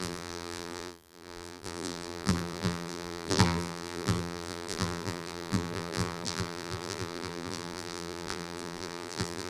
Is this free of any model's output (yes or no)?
no